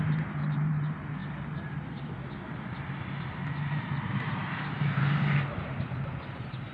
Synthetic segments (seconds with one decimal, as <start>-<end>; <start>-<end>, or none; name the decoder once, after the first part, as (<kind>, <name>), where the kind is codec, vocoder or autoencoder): 0.0-1.2 (vocoder, BigVGAN v2); 3.3-6.7